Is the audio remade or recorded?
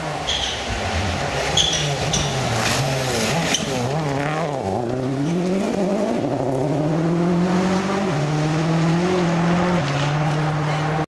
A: recorded